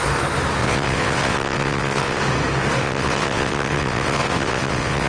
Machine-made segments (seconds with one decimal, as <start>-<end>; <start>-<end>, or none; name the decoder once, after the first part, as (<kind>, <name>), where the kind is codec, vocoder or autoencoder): 0.6-2.2 (vocoder, WaveNeXt); 2.8-5.1